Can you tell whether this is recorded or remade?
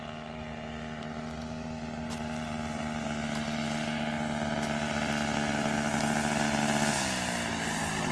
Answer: recorded